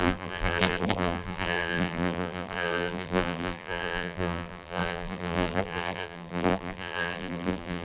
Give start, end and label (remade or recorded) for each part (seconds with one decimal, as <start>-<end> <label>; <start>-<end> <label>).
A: 0.0-7.8 remade